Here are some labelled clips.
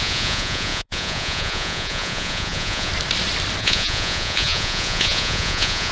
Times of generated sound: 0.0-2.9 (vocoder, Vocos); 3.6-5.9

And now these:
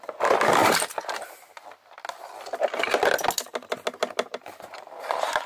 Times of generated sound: 0.6-1.6 (vocoder, BigVGAN v2); 4.3-5.5